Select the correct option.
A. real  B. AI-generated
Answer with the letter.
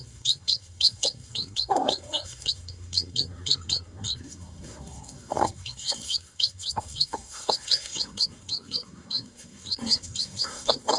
B